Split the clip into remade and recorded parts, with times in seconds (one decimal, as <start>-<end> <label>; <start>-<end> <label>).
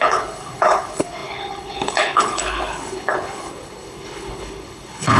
0.0-5.2 remade